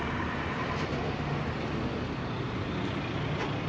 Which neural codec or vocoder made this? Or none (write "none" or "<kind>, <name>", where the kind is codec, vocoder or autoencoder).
none